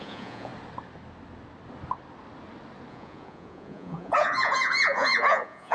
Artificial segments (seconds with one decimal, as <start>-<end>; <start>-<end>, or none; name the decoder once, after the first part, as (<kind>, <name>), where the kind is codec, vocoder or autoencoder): 0.0-0.5 (vocoder, Vocos); 2.9-5.7